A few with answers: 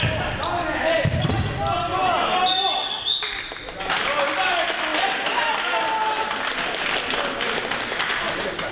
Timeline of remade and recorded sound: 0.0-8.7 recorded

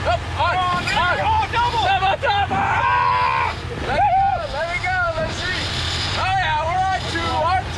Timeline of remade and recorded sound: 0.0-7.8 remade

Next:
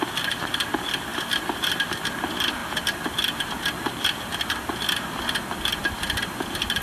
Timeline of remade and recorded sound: 0.0-1.1 recorded; 1.1-1.9 remade; 1.9-6.8 recorded

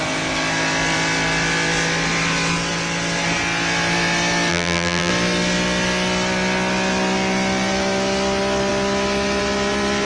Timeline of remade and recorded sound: 0.0-4.5 recorded; 4.5-5.1 remade; 5.1-10.0 recorded

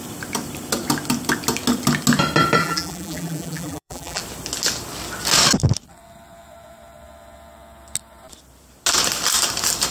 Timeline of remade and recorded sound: 0.0-2.6 recorded; 2.6-4.2 remade; 4.2-9.9 recorded